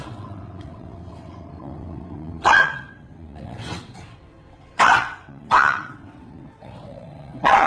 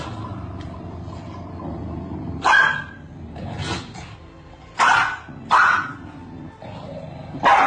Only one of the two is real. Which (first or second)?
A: second